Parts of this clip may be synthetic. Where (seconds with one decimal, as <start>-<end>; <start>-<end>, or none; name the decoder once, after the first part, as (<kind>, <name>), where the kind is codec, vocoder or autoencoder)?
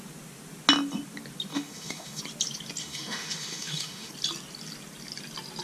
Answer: 1.5-2.2 (autoencoder, DAC-VAE); 2.8-4.1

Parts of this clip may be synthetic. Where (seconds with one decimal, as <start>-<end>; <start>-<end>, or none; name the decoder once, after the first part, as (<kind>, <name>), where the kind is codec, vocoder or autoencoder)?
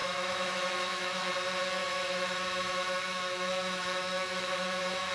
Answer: 0.0-1.3 (autoencoder, DAC-VAE); 1.8-5.1